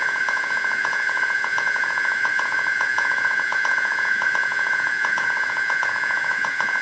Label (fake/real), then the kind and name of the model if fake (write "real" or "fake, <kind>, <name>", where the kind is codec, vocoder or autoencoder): fake, vocoder, Vocos